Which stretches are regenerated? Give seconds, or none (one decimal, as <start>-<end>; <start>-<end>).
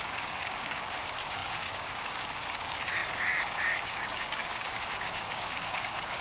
0.0-6.2